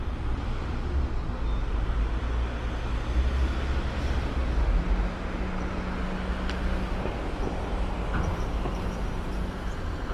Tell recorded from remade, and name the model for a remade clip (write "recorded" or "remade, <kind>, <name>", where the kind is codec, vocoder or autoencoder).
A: recorded